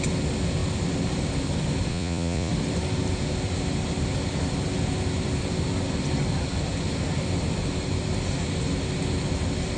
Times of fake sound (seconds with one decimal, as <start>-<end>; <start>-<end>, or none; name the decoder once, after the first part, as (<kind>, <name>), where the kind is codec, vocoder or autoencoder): 1.9-2.5 (vocoder, Vocos)